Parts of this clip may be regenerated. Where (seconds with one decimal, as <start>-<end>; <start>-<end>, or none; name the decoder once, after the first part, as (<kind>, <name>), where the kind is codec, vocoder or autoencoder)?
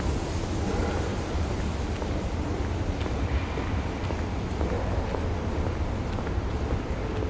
1.1-1.6 (vocoder, BigVGAN v2)